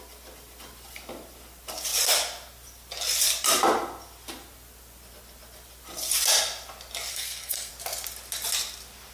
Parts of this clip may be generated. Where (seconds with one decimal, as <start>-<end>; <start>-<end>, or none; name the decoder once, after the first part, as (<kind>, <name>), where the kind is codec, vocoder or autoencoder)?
7.1-7.7 (codec, SNAC)